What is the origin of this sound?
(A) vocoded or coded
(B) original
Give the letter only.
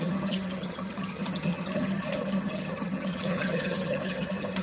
A